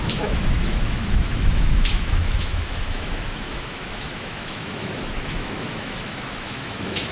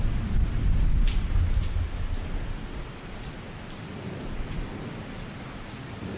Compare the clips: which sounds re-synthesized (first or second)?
first